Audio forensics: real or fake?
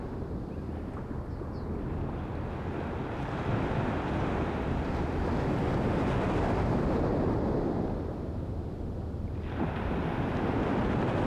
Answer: real